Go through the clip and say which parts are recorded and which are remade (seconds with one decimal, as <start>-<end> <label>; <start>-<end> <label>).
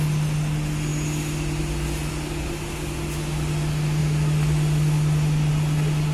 0.0-6.1 recorded